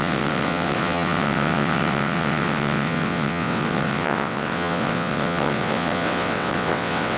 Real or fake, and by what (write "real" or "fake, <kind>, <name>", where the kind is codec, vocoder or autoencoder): fake, vocoder, WaveNeXt